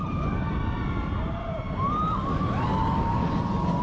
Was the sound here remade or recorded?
recorded